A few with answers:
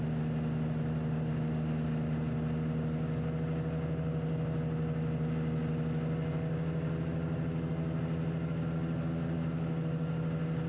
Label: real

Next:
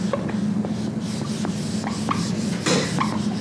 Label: real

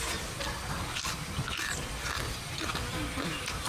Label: real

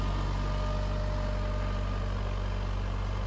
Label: real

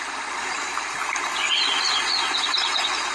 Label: real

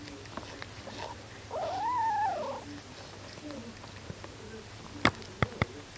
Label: real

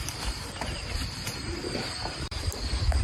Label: fake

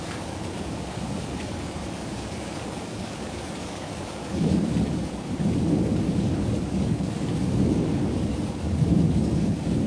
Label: fake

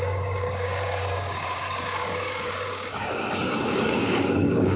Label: fake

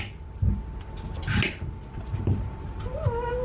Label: real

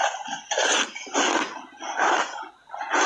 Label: real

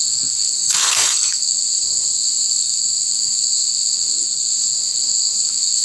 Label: fake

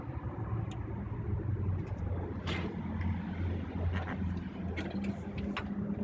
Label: real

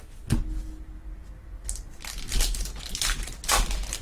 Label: real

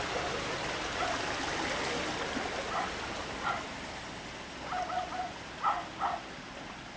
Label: real